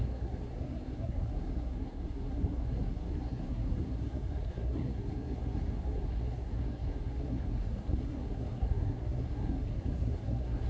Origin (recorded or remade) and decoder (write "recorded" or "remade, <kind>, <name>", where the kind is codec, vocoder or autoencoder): remade, codec, SNAC